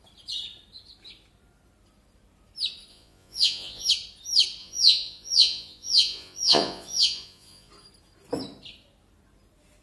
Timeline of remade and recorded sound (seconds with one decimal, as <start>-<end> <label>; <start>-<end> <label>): 0.0-2.9 recorded; 2.9-3.9 remade; 3.9-4.6 recorded; 4.6-7.7 remade; 7.7-9.8 recorded